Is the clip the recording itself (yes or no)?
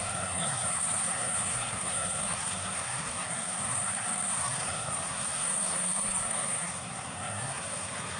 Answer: no